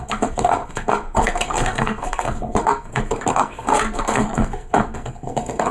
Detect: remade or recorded remade